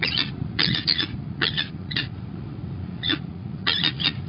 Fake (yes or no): yes